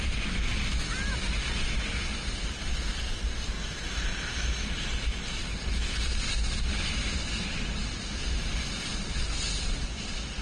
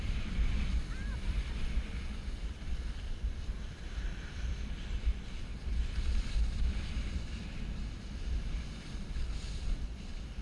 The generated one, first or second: second